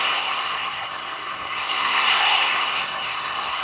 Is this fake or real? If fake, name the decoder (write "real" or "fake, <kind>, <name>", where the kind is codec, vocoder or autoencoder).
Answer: fake, codec, SNAC